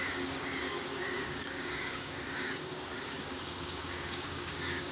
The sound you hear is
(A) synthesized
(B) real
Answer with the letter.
A